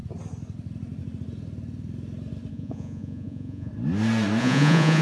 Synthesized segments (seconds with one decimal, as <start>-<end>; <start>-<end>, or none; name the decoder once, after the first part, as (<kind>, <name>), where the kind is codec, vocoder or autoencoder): 2.5-3.7 (vocoder, Vocos); 4.4-5.0

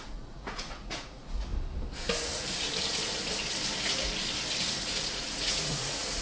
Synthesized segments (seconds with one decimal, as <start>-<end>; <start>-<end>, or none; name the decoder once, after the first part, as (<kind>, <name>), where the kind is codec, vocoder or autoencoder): 0.0-1.5 (vocoder, Vocos); 4.8-6.2

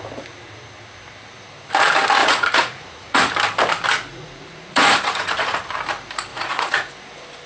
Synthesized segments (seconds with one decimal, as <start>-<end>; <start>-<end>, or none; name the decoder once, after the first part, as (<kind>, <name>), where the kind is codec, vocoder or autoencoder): 2.2-3.2 (vocoder, Vocos); 4.1-5.6; 6.3-6.9

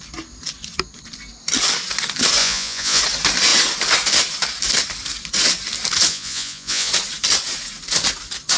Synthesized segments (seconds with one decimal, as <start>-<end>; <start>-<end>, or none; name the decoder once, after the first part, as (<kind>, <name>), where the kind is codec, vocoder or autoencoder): 2.4-3.0 (vocoder, Vocos); 6.1-6.9

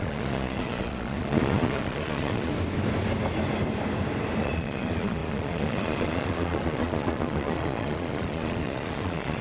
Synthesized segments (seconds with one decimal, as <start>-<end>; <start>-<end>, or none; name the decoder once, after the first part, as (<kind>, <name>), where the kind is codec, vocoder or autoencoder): 0.0-2.5 (vocoder, Vocos); 4.4-9.4